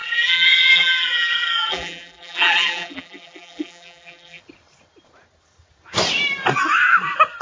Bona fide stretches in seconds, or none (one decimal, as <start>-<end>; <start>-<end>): 4.4-7.4